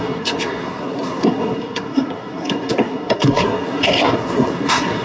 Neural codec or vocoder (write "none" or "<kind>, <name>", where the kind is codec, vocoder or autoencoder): codec, SNAC